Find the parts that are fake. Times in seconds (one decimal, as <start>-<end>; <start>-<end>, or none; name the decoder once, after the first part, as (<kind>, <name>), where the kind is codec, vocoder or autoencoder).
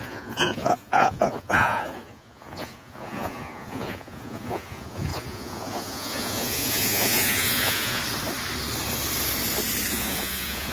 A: 0.0-8.0 (vocoder, Vocos); 9.9-10.7